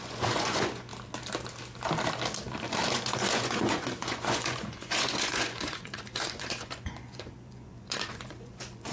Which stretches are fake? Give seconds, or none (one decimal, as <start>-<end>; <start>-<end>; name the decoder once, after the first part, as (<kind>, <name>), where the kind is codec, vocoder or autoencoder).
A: 0.0-0.9 (vocoder, Vocos); 2.9-8.9